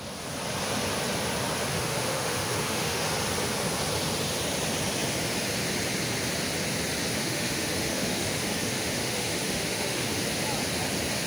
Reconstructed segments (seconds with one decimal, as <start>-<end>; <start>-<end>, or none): 1.7-3.1; 7.1-10.2